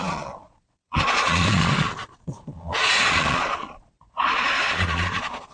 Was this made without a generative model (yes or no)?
no